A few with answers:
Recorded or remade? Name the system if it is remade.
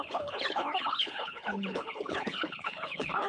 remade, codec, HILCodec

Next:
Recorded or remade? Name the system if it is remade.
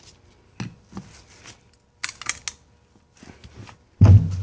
recorded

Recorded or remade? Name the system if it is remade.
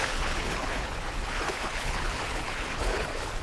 remade, codec, HILCodec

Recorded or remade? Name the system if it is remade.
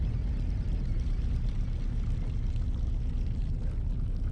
recorded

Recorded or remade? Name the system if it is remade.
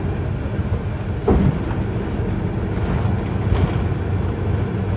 recorded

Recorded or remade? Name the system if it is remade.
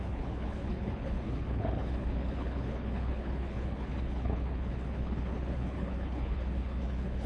remade, codec, HILCodec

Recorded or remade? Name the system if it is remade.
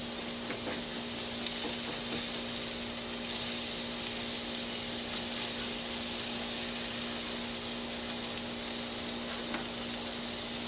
recorded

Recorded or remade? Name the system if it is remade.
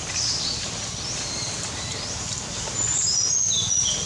recorded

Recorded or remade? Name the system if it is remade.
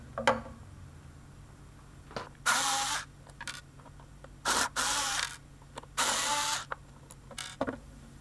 recorded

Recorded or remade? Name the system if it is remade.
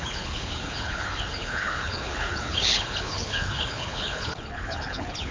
remade, codec, HILCodec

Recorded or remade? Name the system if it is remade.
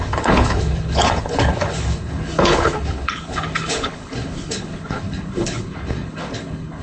remade, codec, HILCodec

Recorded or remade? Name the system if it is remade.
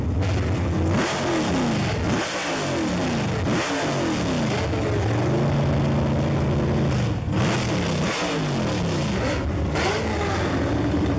recorded